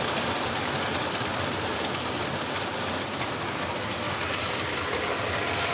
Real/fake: real